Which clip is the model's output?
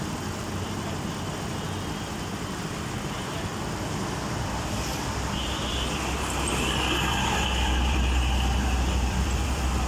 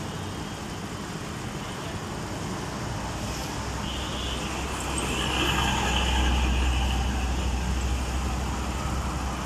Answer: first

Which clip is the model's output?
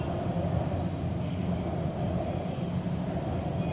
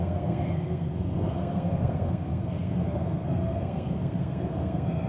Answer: second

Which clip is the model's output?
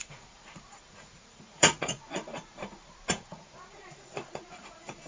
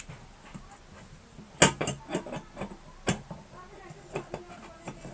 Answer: first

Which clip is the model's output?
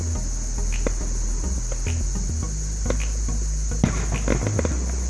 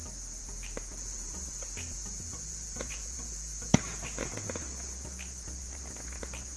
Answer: second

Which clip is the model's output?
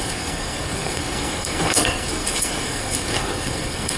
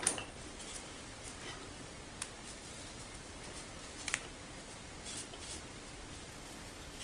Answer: first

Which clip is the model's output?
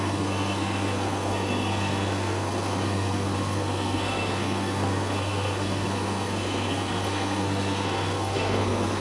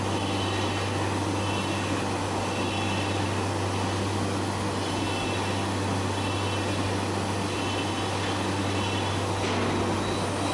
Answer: first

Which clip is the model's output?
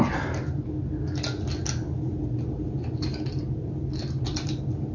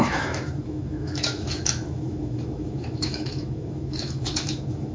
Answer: second